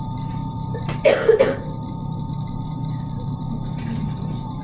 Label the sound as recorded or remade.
remade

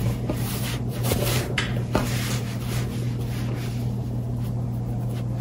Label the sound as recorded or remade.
recorded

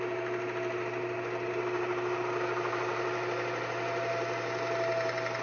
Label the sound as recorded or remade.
recorded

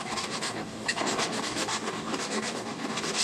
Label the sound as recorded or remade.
remade